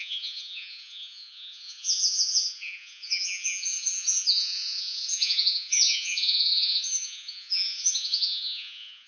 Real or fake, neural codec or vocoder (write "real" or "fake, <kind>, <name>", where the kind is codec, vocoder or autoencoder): fake, vocoder, Vocos